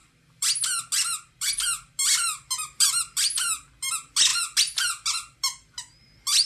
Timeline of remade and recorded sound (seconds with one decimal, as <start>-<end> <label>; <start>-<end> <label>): 0.0-6.5 recorded